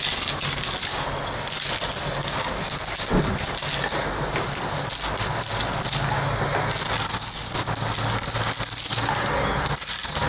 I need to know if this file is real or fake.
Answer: real